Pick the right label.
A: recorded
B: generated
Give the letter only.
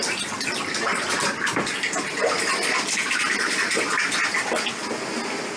A